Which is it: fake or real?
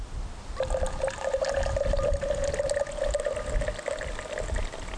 real